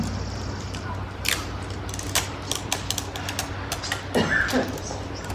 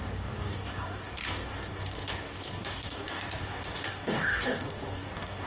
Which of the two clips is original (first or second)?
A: first